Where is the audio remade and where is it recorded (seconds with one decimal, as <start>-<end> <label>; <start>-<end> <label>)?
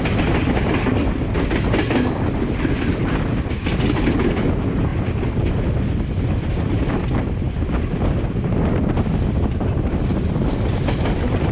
0.0-11.5 recorded